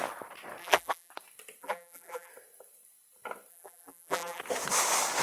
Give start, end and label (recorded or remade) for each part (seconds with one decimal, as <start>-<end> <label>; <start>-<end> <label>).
0.0-0.6 recorded; 0.6-1.1 remade; 1.1-1.6 recorded; 1.6-2.3 remade; 2.3-3.5 recorded; 3.5-4.4 remade; 4.4-5.2 recorded